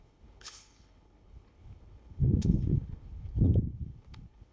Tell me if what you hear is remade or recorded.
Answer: remade